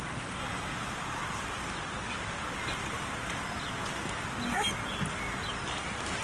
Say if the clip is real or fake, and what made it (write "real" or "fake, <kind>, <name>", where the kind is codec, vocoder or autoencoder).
real